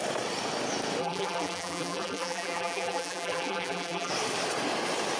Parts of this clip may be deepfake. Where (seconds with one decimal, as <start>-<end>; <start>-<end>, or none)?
1.0-4.1